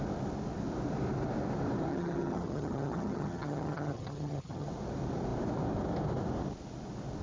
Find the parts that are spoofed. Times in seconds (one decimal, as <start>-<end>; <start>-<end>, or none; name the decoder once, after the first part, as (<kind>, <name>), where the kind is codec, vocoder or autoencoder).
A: 1.9-4.7 (vocoder, HiFi-GAN)